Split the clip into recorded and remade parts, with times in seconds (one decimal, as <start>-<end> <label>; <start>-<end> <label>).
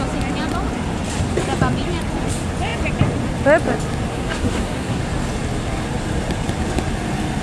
0.0-4.1 recorded; 4.1-5.0 remade; 5.0-7.4 recorded